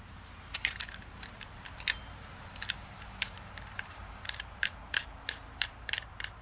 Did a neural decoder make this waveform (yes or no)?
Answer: yes